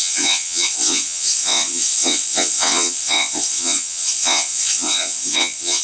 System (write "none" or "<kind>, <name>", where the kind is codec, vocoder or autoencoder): vocoder, WaveNeXt